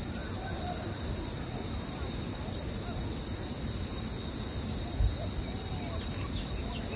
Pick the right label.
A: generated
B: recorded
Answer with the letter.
B